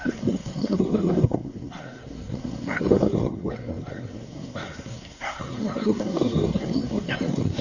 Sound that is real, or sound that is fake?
fake